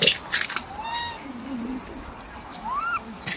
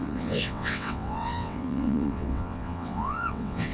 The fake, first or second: second